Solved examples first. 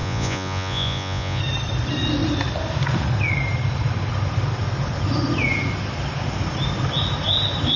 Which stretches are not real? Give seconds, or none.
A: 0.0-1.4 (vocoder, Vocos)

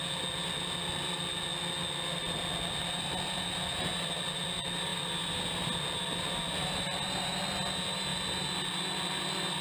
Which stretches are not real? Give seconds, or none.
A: none

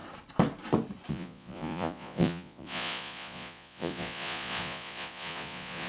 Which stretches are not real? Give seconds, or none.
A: 1.1-5.9 (vocoder, Vocos)

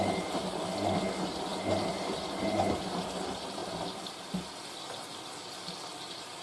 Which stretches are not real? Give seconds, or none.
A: none

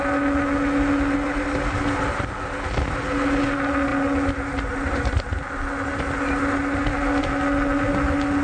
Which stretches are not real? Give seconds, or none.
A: none